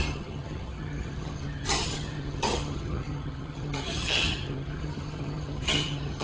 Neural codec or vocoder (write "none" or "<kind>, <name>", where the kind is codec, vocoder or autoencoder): vocoder, HiFi-GAN